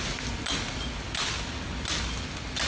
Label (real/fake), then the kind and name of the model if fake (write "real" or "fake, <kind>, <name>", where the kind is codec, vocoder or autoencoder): real